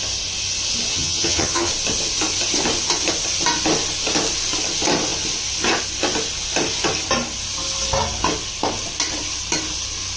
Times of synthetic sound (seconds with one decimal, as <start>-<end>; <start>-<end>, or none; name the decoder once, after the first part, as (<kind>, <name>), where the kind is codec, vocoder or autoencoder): 0.9-1.7 (vocoder, HiFi-GAN)